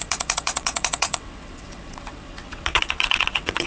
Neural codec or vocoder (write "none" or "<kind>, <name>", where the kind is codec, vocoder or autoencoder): vocoder, WaveNeXt